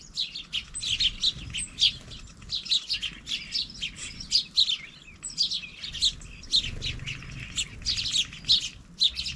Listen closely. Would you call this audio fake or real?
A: real